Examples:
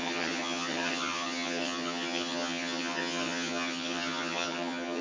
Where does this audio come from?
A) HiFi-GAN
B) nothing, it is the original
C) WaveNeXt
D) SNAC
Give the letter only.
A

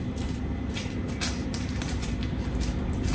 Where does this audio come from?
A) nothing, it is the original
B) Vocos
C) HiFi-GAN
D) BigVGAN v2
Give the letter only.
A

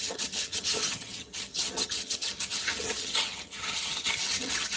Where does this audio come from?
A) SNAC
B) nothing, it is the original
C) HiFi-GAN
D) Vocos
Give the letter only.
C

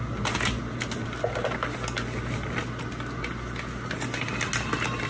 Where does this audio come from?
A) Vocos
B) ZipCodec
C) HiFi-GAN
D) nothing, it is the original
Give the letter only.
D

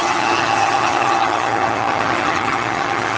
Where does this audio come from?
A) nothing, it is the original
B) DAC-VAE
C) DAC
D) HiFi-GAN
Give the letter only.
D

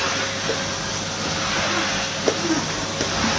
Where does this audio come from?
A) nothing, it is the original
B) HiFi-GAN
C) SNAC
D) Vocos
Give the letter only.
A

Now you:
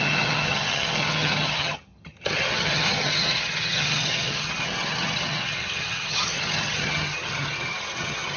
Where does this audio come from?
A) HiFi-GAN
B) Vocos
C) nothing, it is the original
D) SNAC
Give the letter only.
A